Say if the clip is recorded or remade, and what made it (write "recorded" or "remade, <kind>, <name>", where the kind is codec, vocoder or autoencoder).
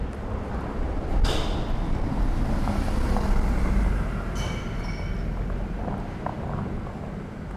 recorded